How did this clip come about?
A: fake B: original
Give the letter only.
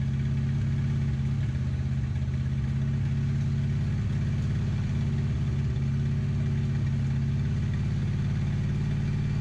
B